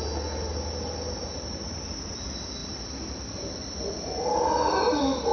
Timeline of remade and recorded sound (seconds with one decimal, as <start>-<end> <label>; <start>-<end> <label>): 0.0-5.3 recorded